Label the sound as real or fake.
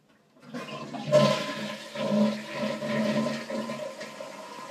real